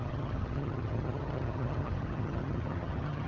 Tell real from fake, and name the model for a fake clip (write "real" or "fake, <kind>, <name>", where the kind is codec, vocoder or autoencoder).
fake, vocoder, HiFi-GAN